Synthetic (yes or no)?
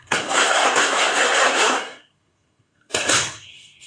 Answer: yes